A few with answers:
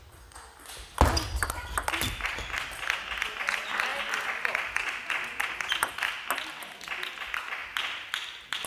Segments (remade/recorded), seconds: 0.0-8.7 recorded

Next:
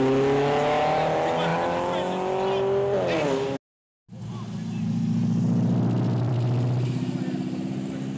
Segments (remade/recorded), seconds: 0.0-8.2 recorded

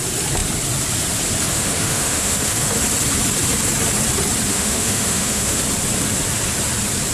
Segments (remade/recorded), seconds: 0.0-1.5 recorded; 1.5-2.7 remade; 2.7-4.5 recorded; 4.5-5.6 remade; 5.6-7.1 recorded

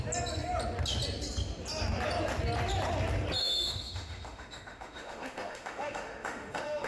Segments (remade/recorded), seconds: 0.0-3.4 recorded; 3.4-6.9 remade

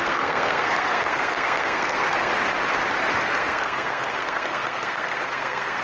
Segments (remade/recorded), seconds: 0.0-2.3 remade; 2.3-3.2 recorded; 3.2-5.8 remade

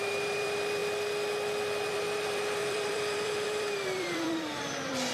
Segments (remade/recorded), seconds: 0.0-0.8 remade; 0.8-1.9 recorded; 1.9-5.1 remade

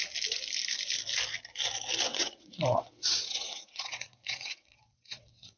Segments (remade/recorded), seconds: 0.0-2.1 recorded; 2.1-5.6 remade

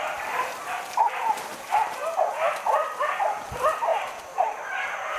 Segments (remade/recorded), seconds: 0.0-5.2 recorded